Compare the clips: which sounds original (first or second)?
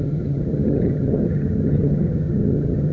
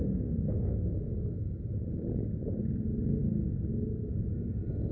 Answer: second